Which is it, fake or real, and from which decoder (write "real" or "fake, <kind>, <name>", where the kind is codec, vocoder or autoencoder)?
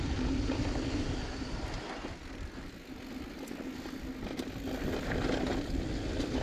real